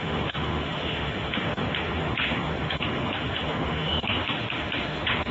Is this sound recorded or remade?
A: remade